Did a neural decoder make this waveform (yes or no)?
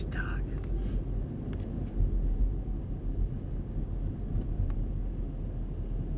no